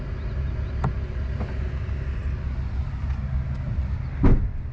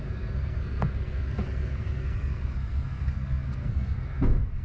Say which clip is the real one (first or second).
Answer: first